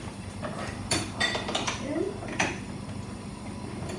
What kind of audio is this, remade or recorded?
remade